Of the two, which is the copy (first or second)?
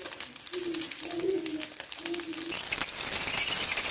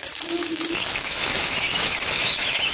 second